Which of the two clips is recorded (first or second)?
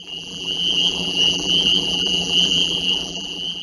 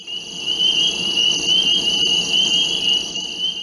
second